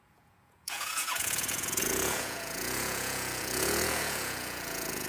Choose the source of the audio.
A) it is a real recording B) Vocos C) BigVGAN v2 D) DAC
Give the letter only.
B